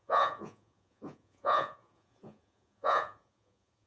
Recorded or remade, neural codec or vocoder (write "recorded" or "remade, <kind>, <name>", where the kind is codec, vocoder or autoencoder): remade, vocoder, Vocos